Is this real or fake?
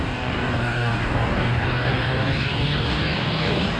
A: fake